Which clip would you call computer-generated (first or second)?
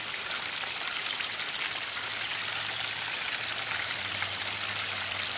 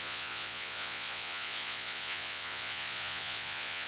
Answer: second